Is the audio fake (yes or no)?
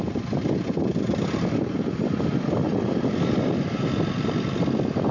no